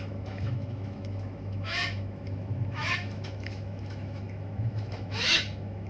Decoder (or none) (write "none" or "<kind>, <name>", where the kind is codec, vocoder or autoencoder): autoencoder, DAC-VAE